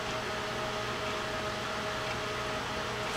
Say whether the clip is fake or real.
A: real